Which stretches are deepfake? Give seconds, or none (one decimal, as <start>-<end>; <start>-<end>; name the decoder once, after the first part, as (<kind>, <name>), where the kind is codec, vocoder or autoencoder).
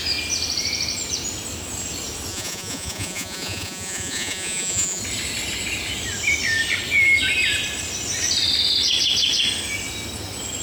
2.3-5.0 (vocoder, Vocos)